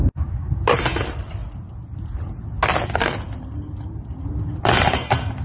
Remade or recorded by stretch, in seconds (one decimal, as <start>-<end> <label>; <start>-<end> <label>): 0.0-5.4 recorded